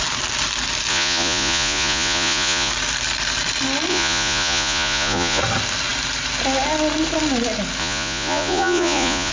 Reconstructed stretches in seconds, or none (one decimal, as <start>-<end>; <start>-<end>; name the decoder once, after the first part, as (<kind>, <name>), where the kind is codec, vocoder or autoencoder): 0.9-2.7 (vocoder, Vocos); 3.9-5.4; 7.8-9.3